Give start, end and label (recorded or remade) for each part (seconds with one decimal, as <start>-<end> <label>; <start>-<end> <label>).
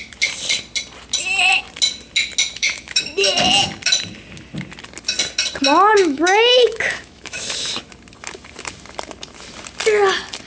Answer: 0.0-2.5 recorded; 2.5-3.0 remade; 3.0-5.9 recorded; 5.9-7.7 remade; 7.7-10.5 recorded